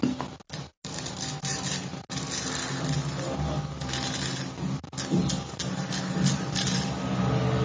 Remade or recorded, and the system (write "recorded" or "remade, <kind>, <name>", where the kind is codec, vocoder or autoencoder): recorded